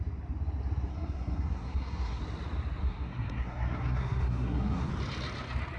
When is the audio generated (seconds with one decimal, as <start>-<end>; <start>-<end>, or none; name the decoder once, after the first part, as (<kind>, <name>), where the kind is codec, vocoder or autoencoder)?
0.9-2.2 (codec, SNAC); 2.8-4.9